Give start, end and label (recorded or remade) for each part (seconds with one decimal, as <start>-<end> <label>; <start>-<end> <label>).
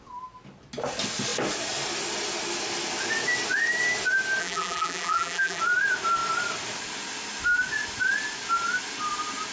0.0-4.4 recorded; 4.4-5.6 remade; 5.6-9.5 recorded